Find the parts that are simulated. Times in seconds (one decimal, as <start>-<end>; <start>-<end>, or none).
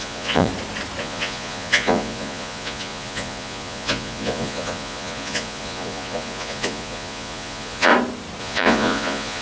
0.0-0.5; 1.0-7.9; 8.4-9.4